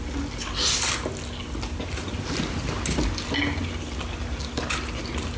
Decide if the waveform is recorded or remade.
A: recorded